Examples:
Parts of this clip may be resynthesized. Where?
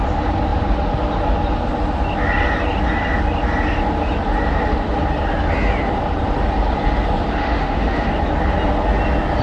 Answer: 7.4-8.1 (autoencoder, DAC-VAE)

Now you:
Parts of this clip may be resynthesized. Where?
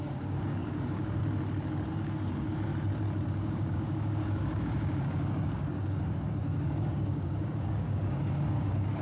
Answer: 0.0-1.2 (codec, DAC); 1.9-2.7; 3.3-9.0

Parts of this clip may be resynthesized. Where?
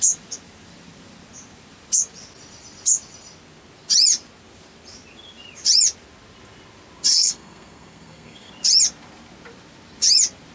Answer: 7.1-8.5 (codec, SNAC)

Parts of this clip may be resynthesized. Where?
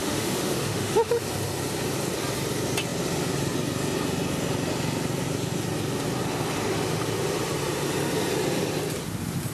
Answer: 0.0-1.1 (autoencoder, DAC-VAE)